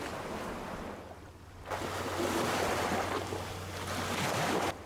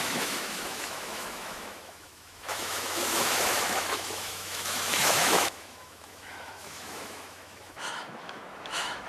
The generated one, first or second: second